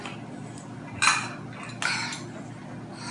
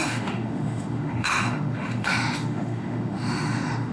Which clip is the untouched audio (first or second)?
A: first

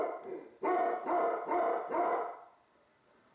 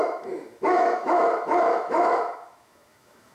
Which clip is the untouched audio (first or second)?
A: first